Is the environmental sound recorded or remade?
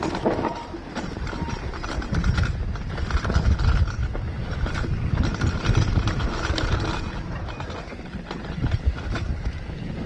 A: remade